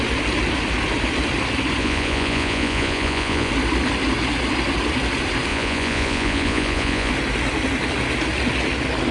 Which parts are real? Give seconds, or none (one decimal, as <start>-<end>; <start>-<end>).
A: 0.0-1.8; 3.5-5.5; 7.1-9.1